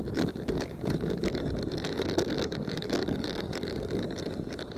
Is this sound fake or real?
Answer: fake